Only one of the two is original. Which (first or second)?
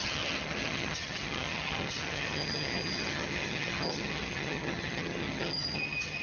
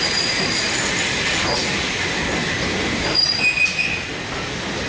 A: second